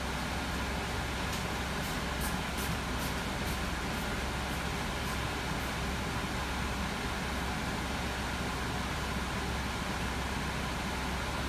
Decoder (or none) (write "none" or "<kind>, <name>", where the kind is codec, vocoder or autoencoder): none